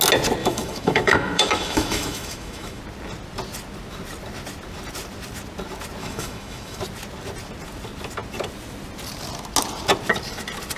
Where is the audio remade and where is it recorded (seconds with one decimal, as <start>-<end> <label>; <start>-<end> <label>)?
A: 0.0-0.4 recorded; 0.4-2.8 remade; 2.8-6.0 recorded; 6.0-6.8 remade; 6.8-10.8 recorded